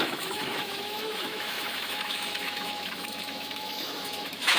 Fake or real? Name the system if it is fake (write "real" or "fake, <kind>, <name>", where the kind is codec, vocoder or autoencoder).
fake, autoencoder, DAC-VAE